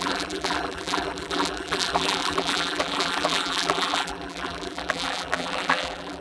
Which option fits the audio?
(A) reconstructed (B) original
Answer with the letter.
A